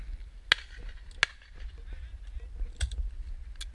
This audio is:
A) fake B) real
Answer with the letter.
B